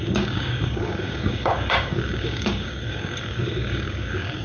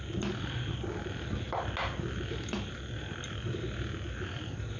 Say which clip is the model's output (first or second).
first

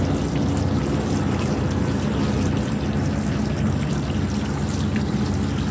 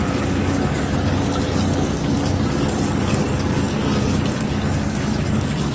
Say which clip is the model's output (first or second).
second